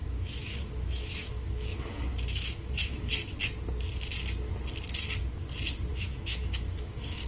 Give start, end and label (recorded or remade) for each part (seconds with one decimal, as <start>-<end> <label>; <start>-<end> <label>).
0.0-3.1 remade; 3.1-5.9 recorded; 5.9-7.3 remade